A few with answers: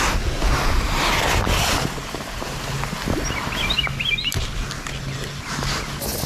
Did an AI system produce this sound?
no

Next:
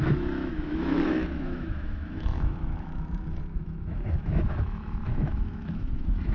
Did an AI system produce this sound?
yes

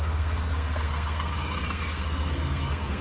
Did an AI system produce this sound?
yes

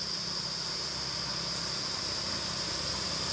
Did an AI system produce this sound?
no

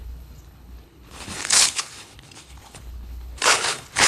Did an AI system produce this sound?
yes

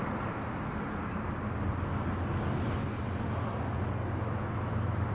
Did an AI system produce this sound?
no